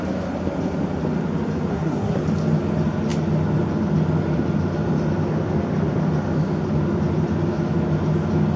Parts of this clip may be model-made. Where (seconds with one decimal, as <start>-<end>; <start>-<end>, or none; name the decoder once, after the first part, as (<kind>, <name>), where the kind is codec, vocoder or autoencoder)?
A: 1.7-2.2 (codec, SNAC)